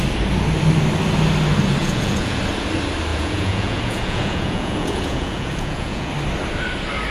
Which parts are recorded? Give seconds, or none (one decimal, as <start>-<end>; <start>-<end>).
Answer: 0.0-1.8; 2.4-3.1; 6.1-7.1